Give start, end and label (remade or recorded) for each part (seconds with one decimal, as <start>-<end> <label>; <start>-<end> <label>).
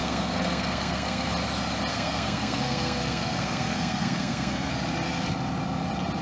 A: 0.0-1.3 remade; 1.3-1.9 recorded; 1.9-4.7 remade; 4.7-6.2 recorded